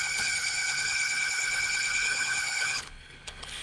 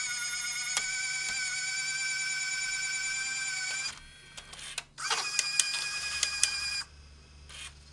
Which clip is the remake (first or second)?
first